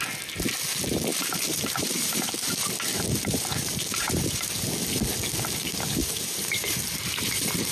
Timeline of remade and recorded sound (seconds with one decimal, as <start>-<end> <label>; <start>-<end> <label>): 0.0-1.1 recorded; 1.1-4.5 remade; 4.5-6.0 recorded; 6.0-7.7 remade